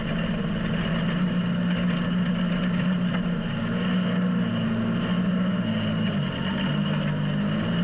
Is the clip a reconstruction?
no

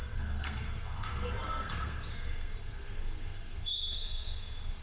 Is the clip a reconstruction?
yes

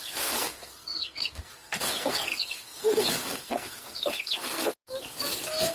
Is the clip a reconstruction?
yes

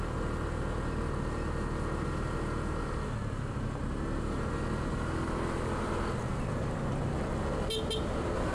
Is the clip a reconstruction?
no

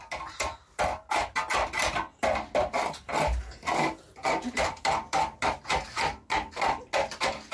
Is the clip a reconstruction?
no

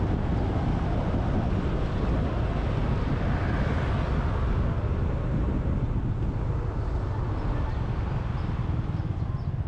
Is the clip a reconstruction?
no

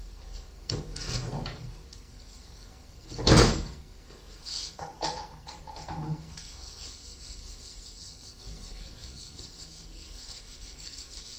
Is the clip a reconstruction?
yes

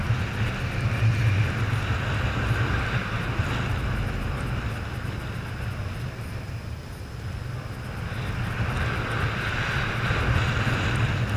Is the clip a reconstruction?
no